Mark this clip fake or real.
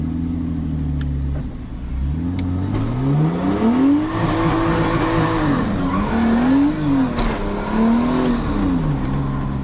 real